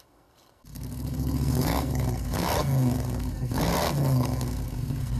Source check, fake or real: fake